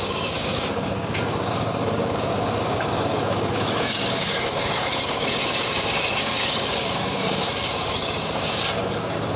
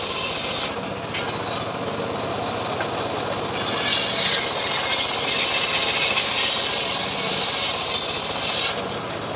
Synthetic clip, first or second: first